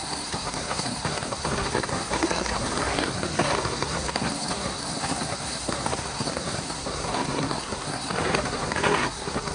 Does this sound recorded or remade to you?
remade